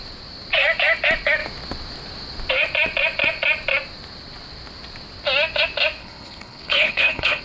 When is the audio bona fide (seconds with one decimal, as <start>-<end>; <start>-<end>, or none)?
0.0-6.0